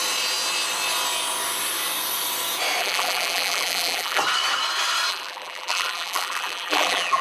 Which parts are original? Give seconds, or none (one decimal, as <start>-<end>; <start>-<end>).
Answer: 0.0-2.8; 4.2-5.1